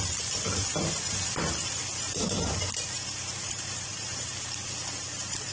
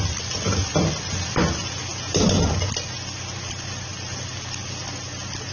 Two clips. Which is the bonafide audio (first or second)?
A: second